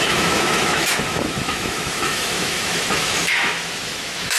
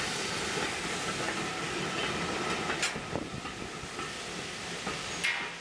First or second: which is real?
second